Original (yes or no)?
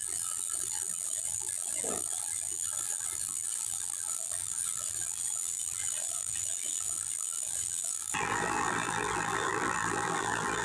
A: no